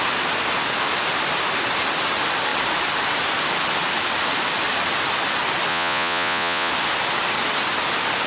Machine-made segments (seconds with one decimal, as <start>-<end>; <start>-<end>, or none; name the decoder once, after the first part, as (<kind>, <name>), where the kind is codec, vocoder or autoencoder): 5.7-6.7 (vocoder, Vocos)